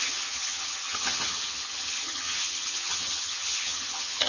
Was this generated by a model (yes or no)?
yes